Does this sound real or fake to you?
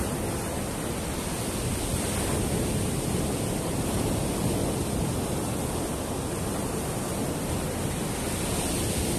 real